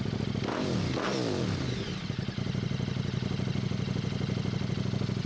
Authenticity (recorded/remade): recorded